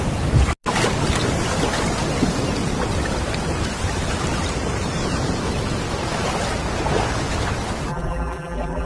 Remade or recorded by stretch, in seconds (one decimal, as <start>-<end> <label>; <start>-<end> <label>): 0.0-7.9 recorded; 7.9-8.9 remade